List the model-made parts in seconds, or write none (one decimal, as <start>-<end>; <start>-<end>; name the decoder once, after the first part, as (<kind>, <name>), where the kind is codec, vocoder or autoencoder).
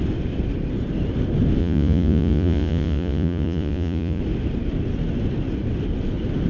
1.6-4.2 (vocoder, Vocos)